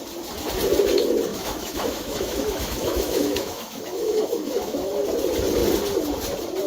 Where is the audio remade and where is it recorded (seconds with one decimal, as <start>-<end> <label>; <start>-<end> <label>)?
0.0-1.3 recorded; 1.3-4.9 remade; 4.9-6.7 recorded